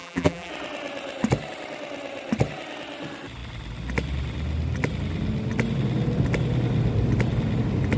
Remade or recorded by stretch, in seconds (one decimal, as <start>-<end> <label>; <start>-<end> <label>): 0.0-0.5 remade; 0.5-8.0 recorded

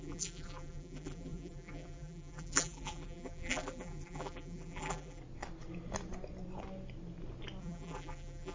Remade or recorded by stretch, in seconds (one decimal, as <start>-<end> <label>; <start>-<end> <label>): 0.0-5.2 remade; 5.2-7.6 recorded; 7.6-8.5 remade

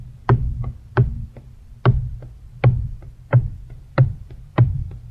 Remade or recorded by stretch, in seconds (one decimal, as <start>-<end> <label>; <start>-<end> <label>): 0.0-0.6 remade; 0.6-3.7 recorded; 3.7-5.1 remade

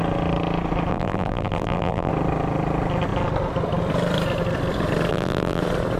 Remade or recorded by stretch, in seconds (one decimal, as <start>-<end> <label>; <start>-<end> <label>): 0.0-0.9 recorded; 0.9-2.1 remade; 2.1-5.1 recorded; 5.1-5.6 remade; 5.6-6.0 recorded

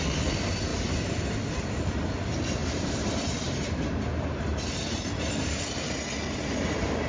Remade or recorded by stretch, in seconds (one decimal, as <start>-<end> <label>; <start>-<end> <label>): 0.0-0.7 recorded; 0.7-1.7 remade; 1.7-2.6 recorded; 2.6-3.4 remade; 3.4-7.1 recorded